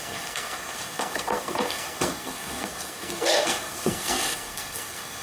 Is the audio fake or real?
fake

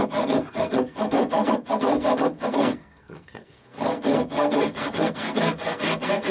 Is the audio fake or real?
fake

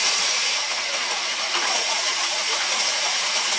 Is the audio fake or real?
fake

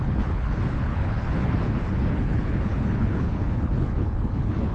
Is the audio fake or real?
fake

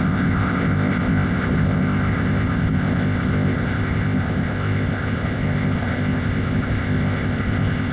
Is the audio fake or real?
fake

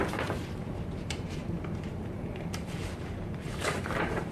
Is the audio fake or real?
fake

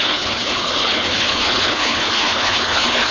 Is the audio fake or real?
fake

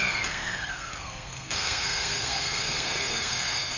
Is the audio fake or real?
fake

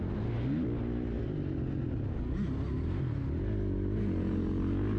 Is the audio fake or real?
real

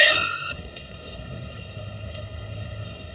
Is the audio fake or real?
fake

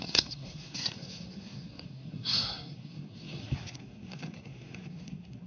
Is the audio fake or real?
fake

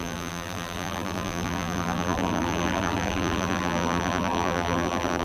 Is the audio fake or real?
fake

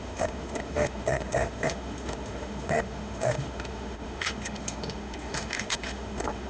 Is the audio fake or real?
fake